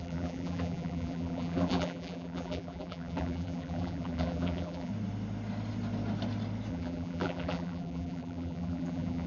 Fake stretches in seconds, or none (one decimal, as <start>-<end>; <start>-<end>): 0.0-4.9; 6.7-9.3

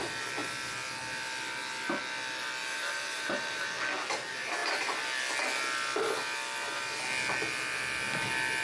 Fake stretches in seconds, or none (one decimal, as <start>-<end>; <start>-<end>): 2.6-3.8

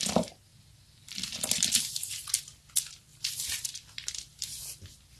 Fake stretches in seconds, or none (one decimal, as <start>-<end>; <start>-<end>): 3.1-4.6

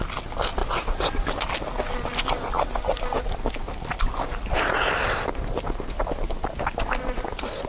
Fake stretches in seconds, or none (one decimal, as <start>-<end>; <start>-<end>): none